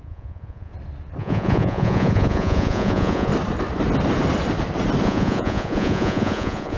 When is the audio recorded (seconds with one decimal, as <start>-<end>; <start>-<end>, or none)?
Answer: 0.7-1.2; 3.3-5.0